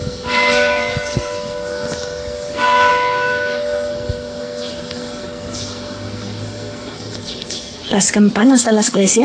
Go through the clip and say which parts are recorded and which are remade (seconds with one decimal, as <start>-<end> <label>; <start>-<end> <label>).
0.0-7.8 remade; 7.8-8.4 recorded; 8.4-9.2 remade